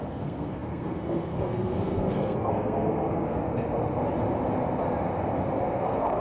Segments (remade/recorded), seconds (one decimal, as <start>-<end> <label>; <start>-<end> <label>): 0.0-3.5 remade; 3.5-5.6 recorded; 5.6-6.2 remade